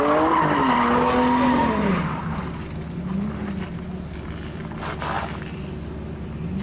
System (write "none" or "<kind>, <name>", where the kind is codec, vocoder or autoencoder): none